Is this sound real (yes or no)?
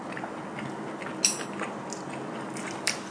yes